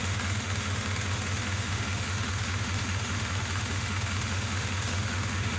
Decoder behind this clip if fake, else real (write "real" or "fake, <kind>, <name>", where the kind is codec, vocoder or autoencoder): fake, autoencoder, DAC-VAE